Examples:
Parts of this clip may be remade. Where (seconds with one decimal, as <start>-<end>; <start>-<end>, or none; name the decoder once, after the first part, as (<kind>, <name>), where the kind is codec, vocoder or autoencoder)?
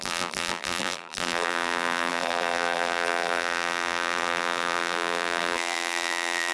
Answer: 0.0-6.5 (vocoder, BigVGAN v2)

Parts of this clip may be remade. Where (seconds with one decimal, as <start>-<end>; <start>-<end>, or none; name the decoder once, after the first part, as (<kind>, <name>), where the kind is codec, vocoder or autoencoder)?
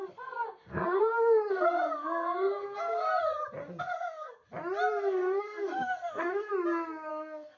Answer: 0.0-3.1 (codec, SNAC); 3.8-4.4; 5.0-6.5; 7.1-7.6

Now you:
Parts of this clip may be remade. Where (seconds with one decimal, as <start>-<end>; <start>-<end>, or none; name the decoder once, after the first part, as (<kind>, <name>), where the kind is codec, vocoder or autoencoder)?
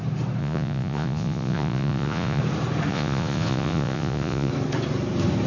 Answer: 0.4-2.4 (vocoder, Vocos); 2.9-4.5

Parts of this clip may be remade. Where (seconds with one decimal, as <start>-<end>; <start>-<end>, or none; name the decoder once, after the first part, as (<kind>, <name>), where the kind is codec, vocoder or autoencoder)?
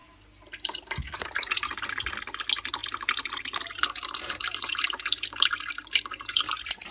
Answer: 0.0-2.0 (vocoder, BigVGAN v2); 2.8-6.9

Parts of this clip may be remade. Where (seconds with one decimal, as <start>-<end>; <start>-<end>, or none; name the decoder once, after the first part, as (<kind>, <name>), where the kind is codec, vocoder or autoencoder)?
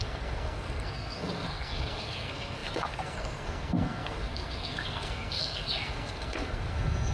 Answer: 0.0-7.1 (codec, SNAC)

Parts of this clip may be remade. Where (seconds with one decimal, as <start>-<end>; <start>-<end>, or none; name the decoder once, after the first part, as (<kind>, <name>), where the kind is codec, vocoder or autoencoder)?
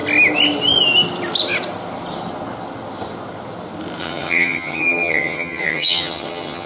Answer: 4.0-6.7 (vocoder, HiFi-GAN)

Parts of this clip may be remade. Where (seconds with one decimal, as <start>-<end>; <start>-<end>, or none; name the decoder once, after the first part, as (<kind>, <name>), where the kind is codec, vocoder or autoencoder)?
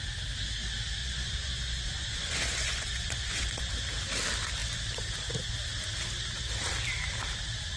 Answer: 1.0-3.7 (vocoder, Vocos)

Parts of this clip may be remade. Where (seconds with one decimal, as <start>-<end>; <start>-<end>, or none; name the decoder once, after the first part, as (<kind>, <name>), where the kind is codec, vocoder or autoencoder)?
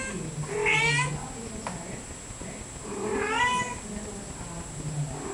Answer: none